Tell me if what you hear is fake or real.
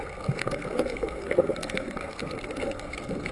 fake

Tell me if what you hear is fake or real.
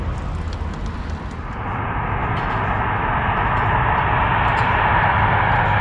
real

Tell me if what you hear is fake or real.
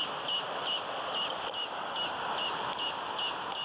real